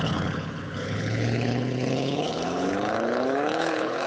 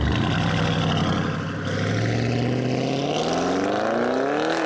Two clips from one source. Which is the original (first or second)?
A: second